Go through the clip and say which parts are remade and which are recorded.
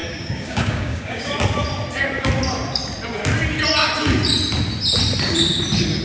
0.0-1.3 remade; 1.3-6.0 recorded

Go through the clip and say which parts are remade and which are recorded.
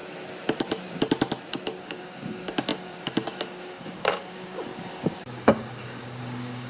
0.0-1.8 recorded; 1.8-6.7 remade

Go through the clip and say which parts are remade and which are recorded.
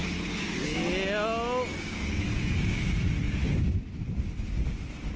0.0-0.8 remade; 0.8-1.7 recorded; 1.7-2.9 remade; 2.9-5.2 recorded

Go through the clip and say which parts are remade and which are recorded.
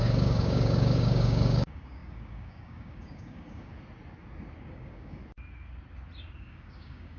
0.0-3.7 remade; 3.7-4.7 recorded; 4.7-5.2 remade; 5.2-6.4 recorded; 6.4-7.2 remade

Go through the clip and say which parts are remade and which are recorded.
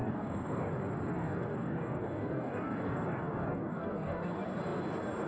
0.0-0.7 remade; 0.7-1.1 recorded; 1.1-4.3 remade; 4.3-5.3 recorded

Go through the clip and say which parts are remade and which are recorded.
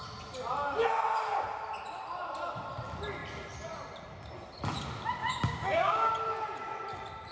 0.0-5.2 recorded; 5.2-6.1 remade; 6.1-7.3 recorded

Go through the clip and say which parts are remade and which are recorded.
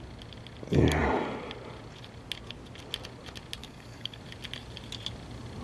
0.0-3.6 recorded; 3.6-4.2 remade; 4.2-5.6 recorded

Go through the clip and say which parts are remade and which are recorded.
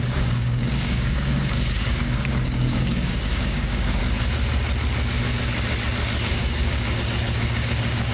0.0-4.0 remade; 4.0-6.3 recorded; 6.3-8.1 remade